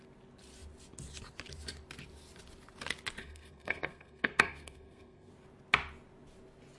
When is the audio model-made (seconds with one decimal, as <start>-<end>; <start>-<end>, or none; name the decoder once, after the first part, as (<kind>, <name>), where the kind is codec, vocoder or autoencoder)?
3.2-5.3 (codec, SNAC)